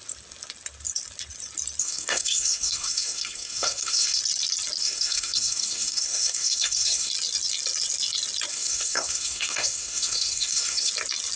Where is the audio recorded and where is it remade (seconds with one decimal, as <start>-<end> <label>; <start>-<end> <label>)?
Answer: 0.0-1.8 recorded; 1.8-4.2 remade; 4.2-4.8 recorded; 4.8-7.1 remade; 7.1-8.5 recorded; 8.5-10.9 remade; 10.9-11.4 recorded